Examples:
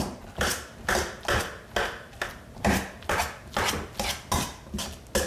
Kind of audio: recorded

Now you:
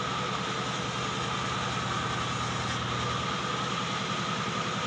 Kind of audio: recorded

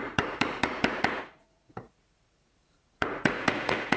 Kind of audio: remade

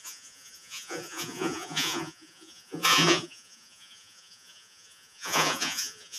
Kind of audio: remade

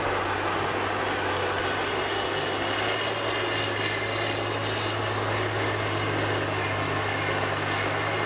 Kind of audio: recorded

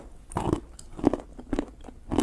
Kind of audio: recorded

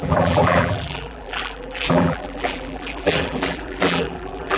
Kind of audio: remade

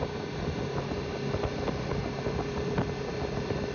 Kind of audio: recorded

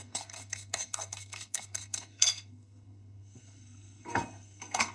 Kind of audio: remade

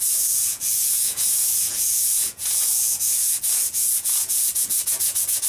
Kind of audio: remade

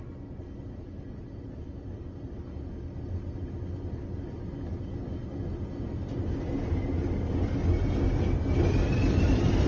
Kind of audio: recorded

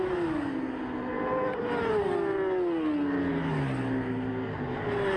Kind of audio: recorded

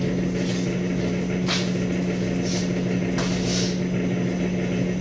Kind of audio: recorded